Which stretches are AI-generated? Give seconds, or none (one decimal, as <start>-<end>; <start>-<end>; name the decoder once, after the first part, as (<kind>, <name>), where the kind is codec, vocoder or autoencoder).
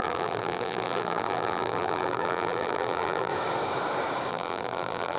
0.0-3.3 (vocoder, BigVGAN v2); 4.3-5.2